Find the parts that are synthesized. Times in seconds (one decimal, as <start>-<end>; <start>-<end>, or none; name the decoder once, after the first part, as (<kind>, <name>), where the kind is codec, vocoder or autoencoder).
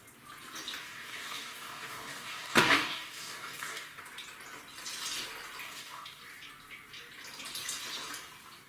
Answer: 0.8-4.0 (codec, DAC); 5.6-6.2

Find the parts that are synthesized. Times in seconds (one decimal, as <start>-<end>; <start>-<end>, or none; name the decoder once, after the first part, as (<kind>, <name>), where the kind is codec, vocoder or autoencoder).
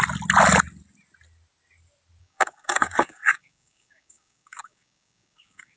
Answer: 2.2-5.8 (codec, DAC)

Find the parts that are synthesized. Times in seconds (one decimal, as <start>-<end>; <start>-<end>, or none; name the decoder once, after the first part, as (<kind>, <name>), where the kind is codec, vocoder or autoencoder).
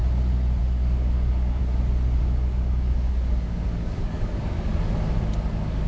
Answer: 0.6-1.6 (codec, DAC); 2.2-4.7; 5.5-5.9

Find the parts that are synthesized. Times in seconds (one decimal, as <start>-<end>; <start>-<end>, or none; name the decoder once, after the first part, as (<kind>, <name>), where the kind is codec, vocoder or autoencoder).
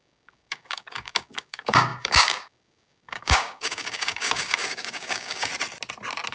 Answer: 0.0-5.5 (codec, DAC)